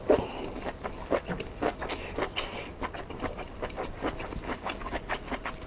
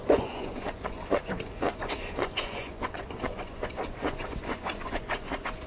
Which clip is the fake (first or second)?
second